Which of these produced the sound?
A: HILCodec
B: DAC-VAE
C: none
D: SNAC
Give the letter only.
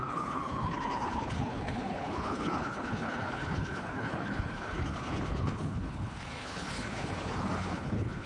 A